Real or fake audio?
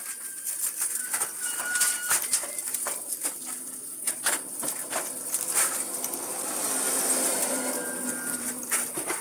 real